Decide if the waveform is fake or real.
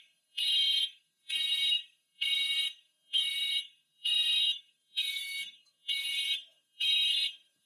fake